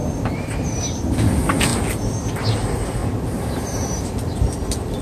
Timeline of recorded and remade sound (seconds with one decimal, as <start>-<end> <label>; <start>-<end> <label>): 0.0-0.8 remade; 0.8-3.0 recorded; 3.0-4.0 remade; 4.0-5.0 recorded